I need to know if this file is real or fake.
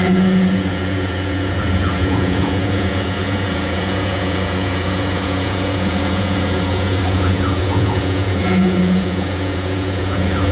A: fake